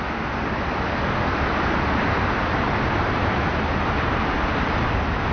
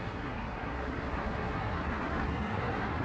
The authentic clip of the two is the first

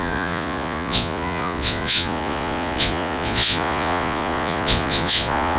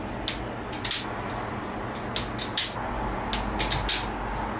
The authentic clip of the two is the second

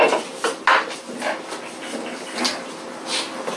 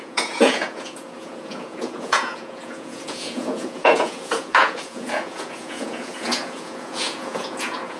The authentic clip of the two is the first